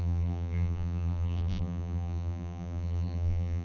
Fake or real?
fake